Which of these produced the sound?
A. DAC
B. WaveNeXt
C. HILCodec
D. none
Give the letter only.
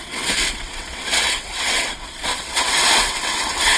B